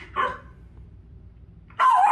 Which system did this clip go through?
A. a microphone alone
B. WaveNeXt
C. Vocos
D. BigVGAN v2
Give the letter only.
D